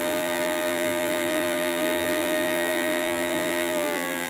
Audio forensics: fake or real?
fake